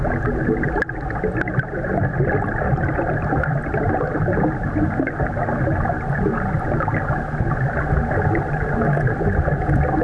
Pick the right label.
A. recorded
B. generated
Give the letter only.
A